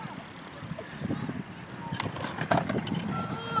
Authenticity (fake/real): real